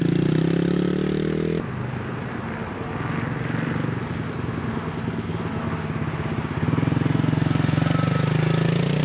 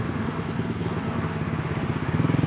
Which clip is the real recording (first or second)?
first